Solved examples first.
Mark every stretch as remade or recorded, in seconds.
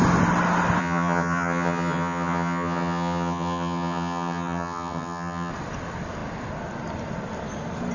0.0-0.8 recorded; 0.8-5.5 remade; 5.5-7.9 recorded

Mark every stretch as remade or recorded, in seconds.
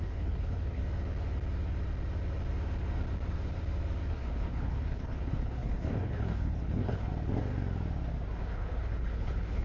0.0-0.8 remade; 0.8-4.1 recorded; 4.1-7.1 remade; 7.1-8.3 recorded; 8.3-9.6 remade